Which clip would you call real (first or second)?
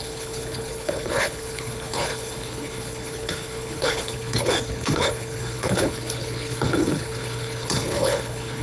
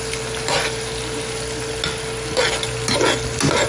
second